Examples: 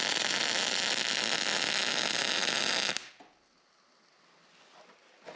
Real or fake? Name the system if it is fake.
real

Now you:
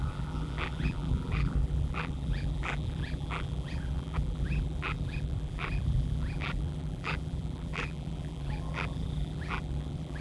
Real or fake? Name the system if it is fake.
fake, vocoder, BigVGAN v2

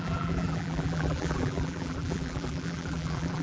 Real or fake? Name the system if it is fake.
fake, vocoder, BigVGAN v2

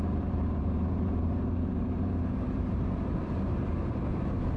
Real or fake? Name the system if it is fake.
fake, vocoder, BigVGAN v2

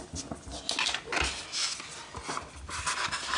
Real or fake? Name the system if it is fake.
real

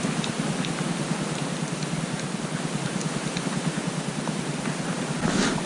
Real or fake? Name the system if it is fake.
fake, vocoder, BigVGAN v2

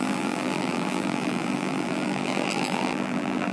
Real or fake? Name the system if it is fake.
fake, vocoder, BigVGAN v2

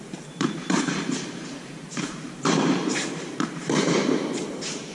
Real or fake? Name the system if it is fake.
fake, vocoder, BigVGAN v2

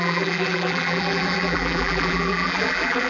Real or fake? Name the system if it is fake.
fake, vocoder, BigVGAN v2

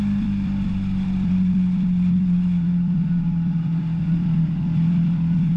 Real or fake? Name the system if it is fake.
fake, vocoder, BigVGAN v2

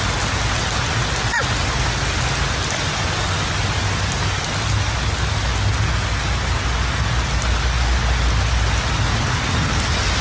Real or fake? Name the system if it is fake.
real